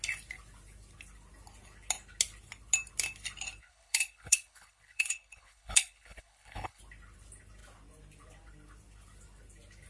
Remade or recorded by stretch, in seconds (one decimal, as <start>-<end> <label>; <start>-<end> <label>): 0.0-3.6 recorded; 3.6-6.8 remade; 6.8-9.9 recorded